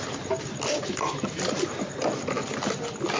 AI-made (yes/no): no